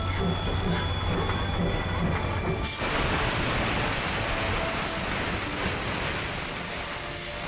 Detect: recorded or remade recorded